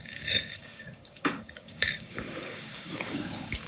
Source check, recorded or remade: remade